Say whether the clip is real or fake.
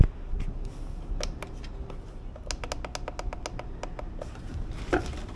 real